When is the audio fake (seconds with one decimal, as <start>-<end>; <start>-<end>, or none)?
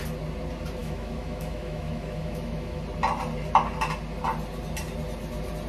0.8-2.8